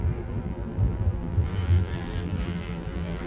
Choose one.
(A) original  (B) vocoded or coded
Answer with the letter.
B